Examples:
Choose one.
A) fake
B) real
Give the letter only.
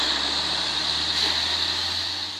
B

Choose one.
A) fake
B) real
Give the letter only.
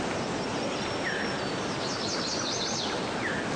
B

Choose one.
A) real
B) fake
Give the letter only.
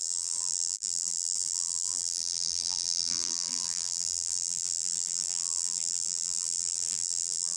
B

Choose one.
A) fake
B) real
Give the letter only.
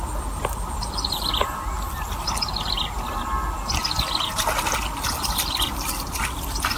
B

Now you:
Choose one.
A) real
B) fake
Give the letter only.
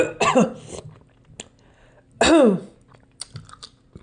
A